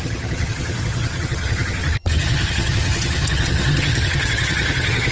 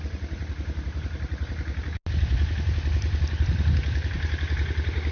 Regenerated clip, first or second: first